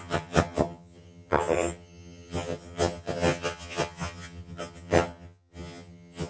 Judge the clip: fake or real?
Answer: fake